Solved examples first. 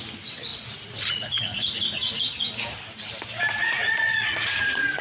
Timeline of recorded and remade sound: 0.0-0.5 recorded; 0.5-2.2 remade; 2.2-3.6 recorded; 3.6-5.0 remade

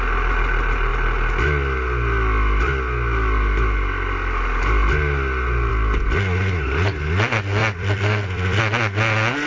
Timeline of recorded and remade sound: 0.0-7.6 recorded; 7.6-8.6 remade; 8.6-9.5 recorded

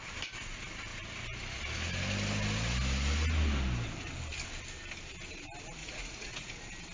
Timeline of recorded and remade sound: 0.0-5.8 recorded; 5.8-6.5 remade; 6.5-6.9 recorded

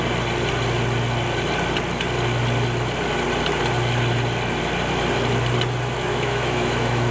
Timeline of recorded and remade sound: 0.0-6.1 recorded; 6.1-7.1 remade